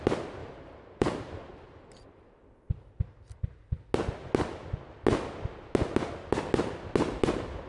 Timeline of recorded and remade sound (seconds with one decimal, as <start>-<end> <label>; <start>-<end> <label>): 0.0-0.4 recorded; 0.4-2.5 remade; 2.5-7.7 recorded